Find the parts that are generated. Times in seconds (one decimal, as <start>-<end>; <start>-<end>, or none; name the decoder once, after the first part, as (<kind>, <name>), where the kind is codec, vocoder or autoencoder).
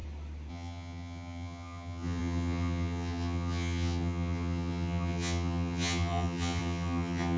0.5-7.4 (vocoder, HiFi-GAN)